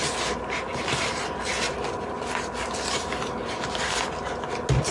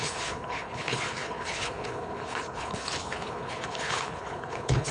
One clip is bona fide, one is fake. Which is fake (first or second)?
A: second